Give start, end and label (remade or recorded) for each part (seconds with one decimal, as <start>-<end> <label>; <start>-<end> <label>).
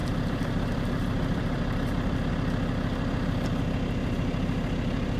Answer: 0.0-2.3 remade; 2.3-5.2 recorded